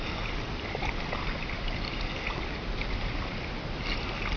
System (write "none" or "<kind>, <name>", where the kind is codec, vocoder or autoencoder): none